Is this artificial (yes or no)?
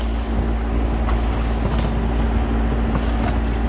no